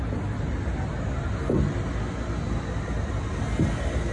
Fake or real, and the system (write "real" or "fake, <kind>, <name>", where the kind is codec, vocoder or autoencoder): real